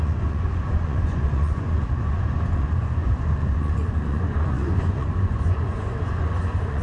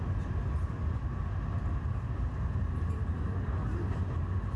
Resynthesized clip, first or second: first